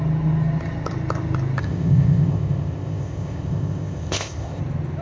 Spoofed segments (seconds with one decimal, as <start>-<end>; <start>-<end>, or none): 1.6-4.6